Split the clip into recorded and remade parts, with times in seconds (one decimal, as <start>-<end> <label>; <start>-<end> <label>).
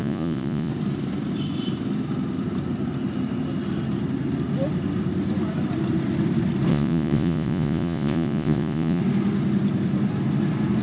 0.0-0.7 remade; 0.7-6.7 recorded; 6.7-9.0 remade; 9.0-10.8 recorded